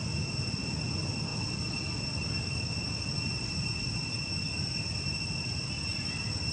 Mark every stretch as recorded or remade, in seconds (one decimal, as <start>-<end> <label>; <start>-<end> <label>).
0.0-6.5 recorded